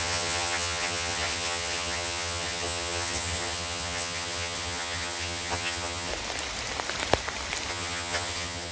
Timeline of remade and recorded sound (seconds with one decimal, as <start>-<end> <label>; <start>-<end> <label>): 0.0-6.1 remade; 6.1-7.7 recorded; 7.7-8.7 remade